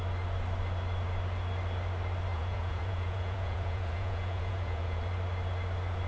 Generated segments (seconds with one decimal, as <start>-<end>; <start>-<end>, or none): 2.3-5.0

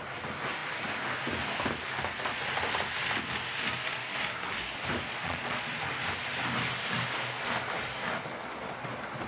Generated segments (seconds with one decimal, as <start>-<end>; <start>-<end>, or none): 5.1-5.8